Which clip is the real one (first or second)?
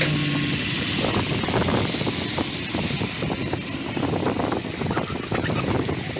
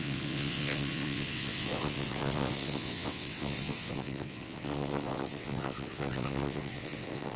first